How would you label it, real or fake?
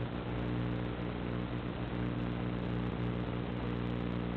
real